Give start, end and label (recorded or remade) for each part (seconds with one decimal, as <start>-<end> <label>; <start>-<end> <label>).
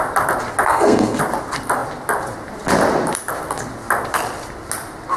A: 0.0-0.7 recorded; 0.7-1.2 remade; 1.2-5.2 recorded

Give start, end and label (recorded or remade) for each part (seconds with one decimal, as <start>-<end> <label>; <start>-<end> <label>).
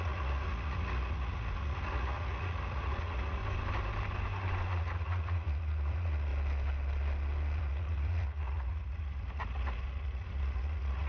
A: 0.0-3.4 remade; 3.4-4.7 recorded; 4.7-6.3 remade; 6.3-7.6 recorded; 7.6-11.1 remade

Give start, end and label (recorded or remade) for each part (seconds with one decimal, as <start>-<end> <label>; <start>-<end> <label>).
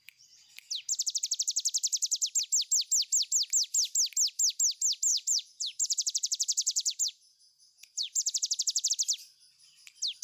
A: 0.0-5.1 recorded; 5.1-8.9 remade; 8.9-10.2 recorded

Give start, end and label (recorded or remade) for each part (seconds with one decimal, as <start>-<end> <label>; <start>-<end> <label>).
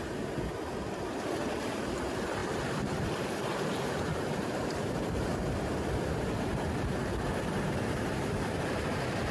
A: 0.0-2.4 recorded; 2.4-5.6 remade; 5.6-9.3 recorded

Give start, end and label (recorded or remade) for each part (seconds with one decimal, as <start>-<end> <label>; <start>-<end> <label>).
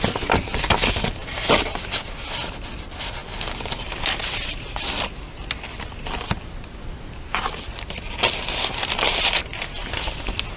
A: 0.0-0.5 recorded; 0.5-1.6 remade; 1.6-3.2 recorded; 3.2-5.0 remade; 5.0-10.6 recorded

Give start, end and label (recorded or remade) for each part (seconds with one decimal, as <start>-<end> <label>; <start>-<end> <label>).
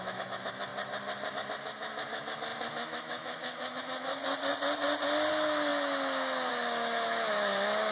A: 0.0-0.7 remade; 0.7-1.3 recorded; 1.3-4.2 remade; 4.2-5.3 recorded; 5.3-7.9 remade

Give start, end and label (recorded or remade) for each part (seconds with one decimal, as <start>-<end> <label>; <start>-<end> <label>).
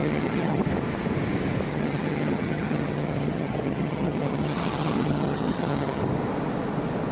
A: 0.0-0.6 remade; 0.6-1.7 recorded; 1.7-6.0 remade; 6.0-7.1 recorded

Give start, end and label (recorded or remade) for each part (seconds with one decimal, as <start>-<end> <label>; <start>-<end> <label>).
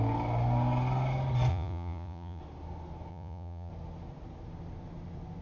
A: 0.0-1.5 recorded; 1.5-2.4 remade; 2.4-3.1 recorded; 3.1-3.7 remade; 3.7-5.4 recorded